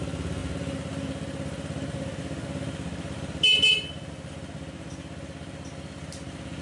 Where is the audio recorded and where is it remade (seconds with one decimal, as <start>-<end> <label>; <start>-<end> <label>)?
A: 0.0-6.6 recorded